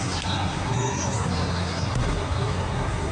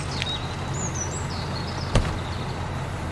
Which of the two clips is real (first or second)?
second